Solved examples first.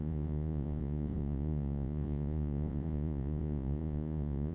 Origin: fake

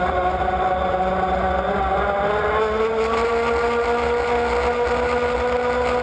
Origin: real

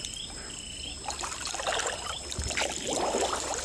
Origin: real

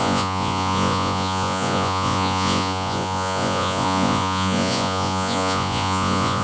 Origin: fake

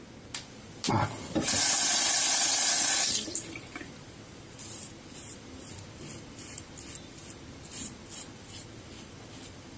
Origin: real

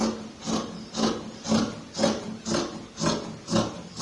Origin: real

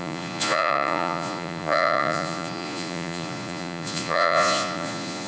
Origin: fake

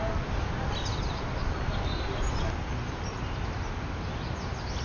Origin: real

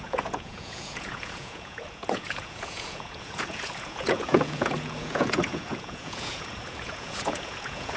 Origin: fake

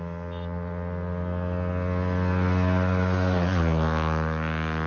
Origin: real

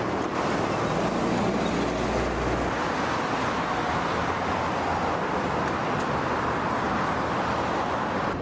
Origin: real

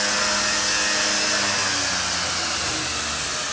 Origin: real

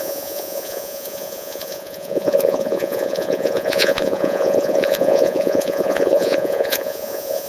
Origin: fake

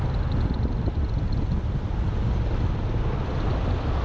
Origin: real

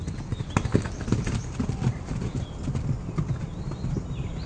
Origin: real